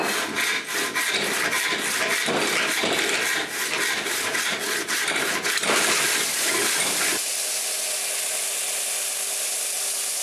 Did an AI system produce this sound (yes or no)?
no